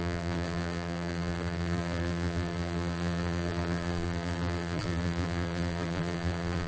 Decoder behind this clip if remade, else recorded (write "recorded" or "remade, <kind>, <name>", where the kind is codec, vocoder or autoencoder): remade, vocoder, BigVGAN v2